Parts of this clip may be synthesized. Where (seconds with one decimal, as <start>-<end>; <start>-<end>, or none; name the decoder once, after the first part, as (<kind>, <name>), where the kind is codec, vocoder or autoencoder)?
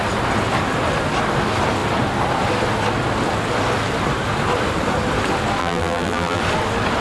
5.6-6.4 (vocoder, BigVGAN v2)